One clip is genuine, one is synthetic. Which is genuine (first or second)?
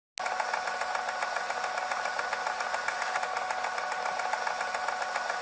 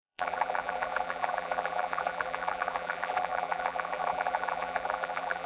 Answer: first